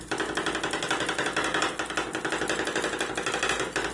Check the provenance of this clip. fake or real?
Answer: real